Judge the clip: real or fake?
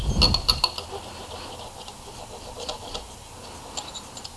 real